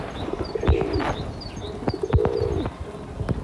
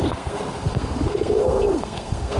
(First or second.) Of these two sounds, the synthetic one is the second